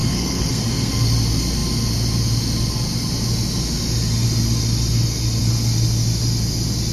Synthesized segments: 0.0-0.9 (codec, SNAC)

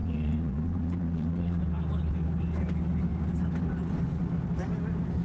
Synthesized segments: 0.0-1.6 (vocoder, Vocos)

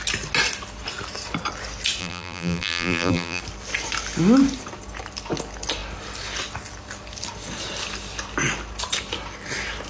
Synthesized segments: 2.0-3.4 (vocoder, BigVGAN v2)

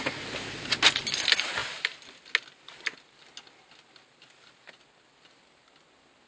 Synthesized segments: none

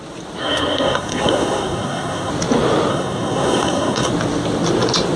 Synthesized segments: 0.4-2.3 (codec, SNAC); 2.9-4.1

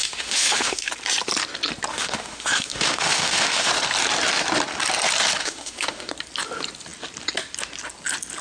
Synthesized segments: 0.0-0.9 (autoencoder, DAC-VAE); 1.9-3.7; 5.4-6.1

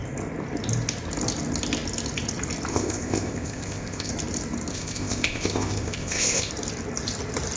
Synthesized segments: 2.7-4.1 (codec, ZipCodec); 4.7-6.5